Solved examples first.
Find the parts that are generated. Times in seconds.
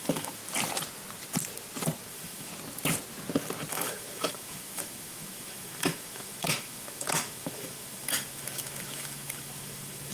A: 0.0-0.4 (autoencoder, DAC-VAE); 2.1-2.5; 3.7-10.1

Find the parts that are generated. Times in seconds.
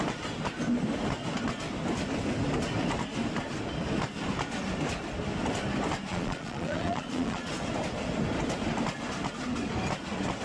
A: 6.1-7.5 (vocoder, Vocos)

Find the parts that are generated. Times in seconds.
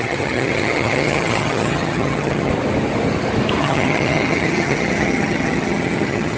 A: 0.0-2.5 (vocoder, HiFi-GAN); 3.6-6.4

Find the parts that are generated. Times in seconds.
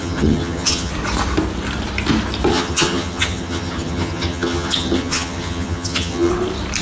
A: 0.0-0.9 (vocoder, HiFi-GAN); 2.5-6.3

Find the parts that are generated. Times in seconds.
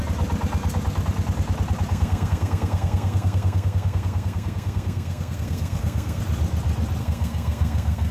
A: 1.9-6.2 (codec, SNAC); 7.0-8.1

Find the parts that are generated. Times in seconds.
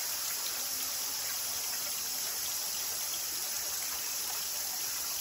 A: 0.0-5.2 (vocoder, BigVGAN v2)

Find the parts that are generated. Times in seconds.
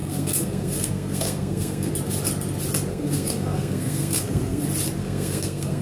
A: 0.0-1.9 (codec, SNAC); 2.9-4.6; 5.0-5.8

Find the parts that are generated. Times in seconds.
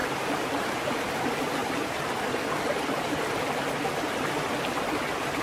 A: 0.0-1.6 (vocoder, BigVGAN v2); 4.8-5.4